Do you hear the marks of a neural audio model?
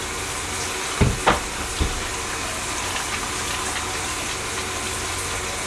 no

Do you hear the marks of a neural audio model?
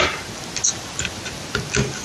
no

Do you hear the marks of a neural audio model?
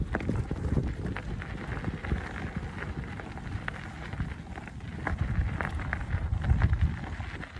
no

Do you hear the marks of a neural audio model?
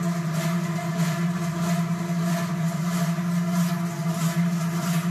no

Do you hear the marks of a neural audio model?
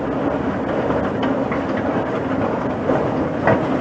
no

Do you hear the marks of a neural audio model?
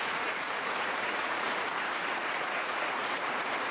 yes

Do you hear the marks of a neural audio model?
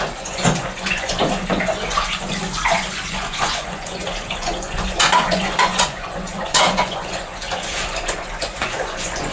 yes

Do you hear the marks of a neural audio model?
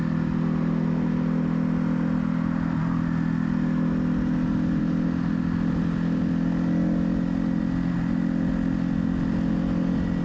no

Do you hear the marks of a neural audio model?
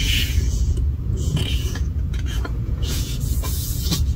yes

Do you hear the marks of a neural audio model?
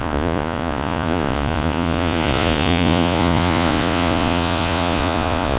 yes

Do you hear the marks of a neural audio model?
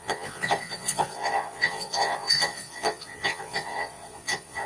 yes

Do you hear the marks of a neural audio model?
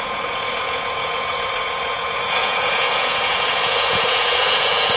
yes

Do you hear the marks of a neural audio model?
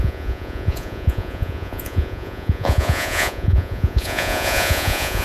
yes